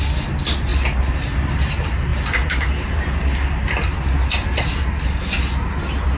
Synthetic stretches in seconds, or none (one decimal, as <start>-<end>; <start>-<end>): none